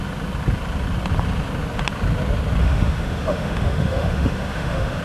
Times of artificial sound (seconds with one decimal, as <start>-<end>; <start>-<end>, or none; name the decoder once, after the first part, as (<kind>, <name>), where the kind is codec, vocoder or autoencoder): 2.6-5.0 (autoencoder, DAC-VAE)